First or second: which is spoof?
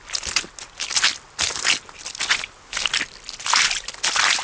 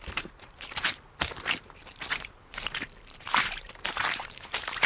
second